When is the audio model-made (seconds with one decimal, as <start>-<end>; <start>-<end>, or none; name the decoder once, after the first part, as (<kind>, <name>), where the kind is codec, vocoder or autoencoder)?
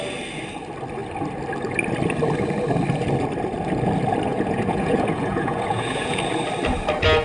4.3-6.2 (vocoder, Vocos)